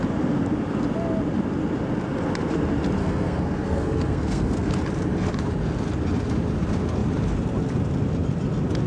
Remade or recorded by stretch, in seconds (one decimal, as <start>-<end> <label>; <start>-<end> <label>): 0.0-3.0 recorded; 3.0-4.7 remade; 4.7-8.9 recorded